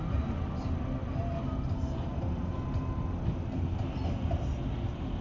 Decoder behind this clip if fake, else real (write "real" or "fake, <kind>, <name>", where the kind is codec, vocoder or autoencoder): real